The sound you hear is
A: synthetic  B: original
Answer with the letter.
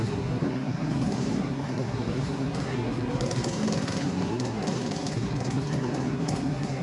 A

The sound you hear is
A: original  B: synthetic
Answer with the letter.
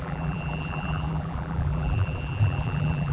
B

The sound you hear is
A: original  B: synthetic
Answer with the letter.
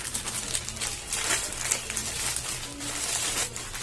A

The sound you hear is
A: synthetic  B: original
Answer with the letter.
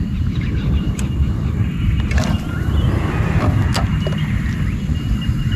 B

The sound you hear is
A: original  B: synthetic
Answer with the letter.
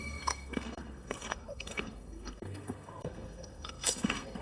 B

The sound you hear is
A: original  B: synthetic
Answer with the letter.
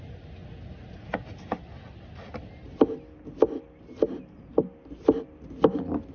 A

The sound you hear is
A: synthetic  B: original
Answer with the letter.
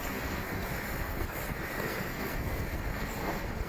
A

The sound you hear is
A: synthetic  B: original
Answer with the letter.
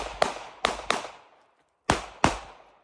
B